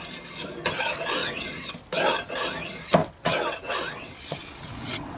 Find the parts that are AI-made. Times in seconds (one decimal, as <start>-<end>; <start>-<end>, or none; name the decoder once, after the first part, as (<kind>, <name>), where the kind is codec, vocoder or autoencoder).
1.2-1.7 (vocoder, WaveNeXt); 3.0-5.2